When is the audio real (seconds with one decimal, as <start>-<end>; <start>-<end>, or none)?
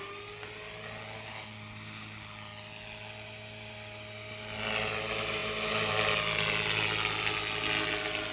0.0-8.3